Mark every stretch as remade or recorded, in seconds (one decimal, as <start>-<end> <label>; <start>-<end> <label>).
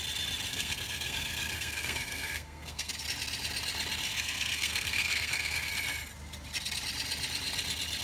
0.0-0.5 recorded; 0.5-2.9 remade; 2.9-4.1 recorded; 4.1-5.7 remade; 5.7-8.0 recorded